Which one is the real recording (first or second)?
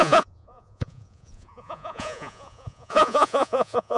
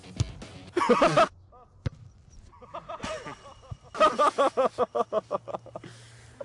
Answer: second